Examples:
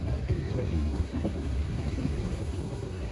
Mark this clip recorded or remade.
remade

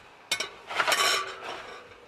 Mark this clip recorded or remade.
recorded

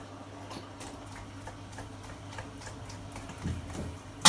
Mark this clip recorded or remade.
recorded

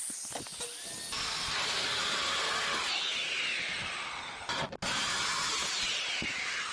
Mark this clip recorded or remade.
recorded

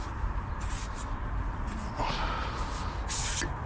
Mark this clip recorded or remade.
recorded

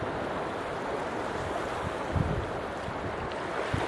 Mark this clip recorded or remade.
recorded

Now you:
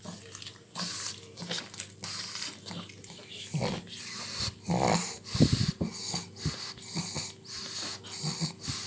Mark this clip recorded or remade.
recorded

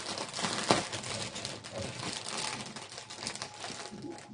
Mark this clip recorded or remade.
recorded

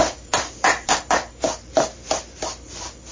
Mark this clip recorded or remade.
recorded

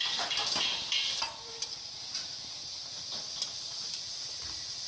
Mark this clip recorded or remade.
recorded